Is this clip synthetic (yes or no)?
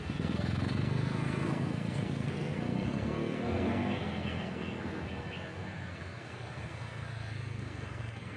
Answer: yes